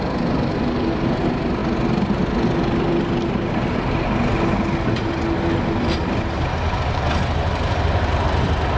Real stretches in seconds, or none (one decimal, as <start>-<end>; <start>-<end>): 0.0-8.8

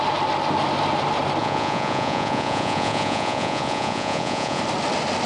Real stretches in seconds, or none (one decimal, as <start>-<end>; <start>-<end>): 0.0-1.4; 4.6-5.3

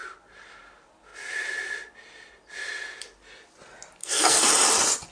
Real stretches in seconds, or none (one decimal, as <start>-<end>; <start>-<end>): 0.0-4.0; 4.5-5.1

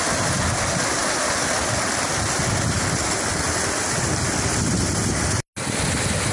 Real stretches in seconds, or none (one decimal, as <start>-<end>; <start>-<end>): 0.0-6.3

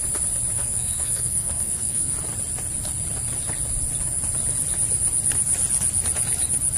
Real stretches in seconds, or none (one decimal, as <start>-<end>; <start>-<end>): 0.0-0.6; 2.1-6.8

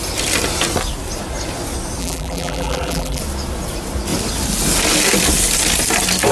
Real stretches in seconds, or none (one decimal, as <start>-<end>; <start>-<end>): 0.0-2.0; 3.2-6.3

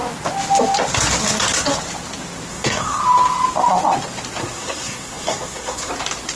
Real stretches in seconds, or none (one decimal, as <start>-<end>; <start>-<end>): 0.0-2.5; 3.0-4.4; 5.9-6.4